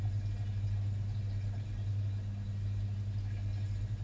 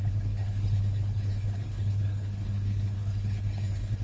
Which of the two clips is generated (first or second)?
second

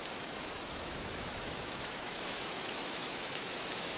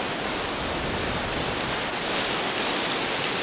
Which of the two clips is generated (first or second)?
first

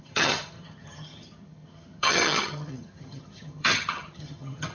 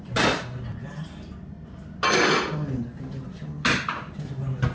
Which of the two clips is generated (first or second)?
first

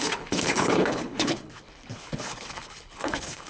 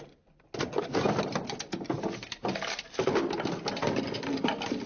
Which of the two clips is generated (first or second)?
first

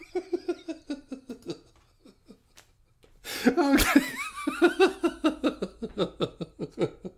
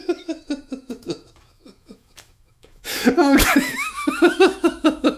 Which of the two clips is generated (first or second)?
second